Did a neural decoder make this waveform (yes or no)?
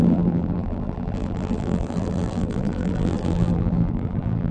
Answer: yes